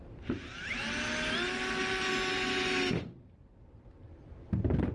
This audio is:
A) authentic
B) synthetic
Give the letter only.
A